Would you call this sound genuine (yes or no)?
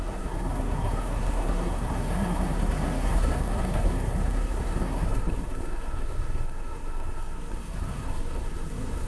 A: no